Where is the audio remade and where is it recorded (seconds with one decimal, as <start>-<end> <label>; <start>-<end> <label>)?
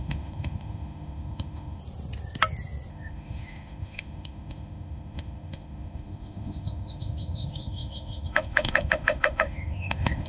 0.0-1.8 remade; 1.8-2.9 recorded; 2.9-10.3 remade